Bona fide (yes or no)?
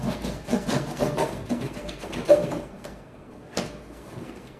no